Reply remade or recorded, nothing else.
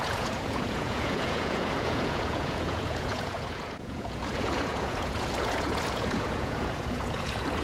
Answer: remade